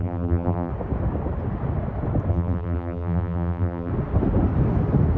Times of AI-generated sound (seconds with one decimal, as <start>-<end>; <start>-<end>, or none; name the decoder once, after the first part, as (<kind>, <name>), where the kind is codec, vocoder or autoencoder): 0.0-0.7 (vocoder, BigVGAN v2); 2.3-3.9